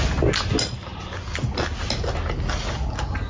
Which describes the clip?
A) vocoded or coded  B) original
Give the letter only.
B